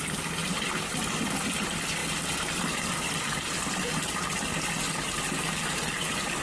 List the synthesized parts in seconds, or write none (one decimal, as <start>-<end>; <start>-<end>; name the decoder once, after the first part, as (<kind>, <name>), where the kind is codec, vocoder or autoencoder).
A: none

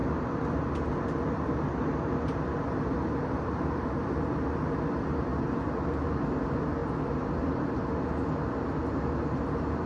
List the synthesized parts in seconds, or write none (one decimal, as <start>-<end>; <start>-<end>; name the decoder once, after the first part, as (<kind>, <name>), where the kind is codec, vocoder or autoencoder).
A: none